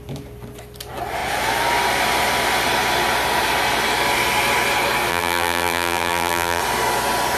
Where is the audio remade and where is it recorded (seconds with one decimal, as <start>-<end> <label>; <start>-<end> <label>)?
0.0-5.1 recorded; 5.1-6.6 remade; 6.6-7.4 recorded